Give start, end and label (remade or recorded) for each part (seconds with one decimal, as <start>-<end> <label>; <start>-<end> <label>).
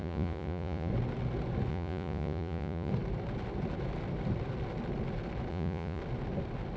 0.0-0.9 remade; 0.9-1.7 recorded; 1.7-2.9 remade; 2.9-5.5 recorded; 5.5-6.0 remade; 6.0-6.8 recorded